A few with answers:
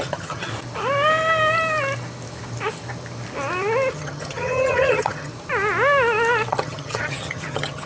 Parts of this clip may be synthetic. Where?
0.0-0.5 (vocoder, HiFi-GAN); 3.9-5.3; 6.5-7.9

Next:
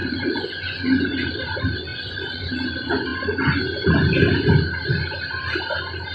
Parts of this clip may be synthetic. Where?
0.0-1.1 (vocoder, Vocos); 1.9-2.7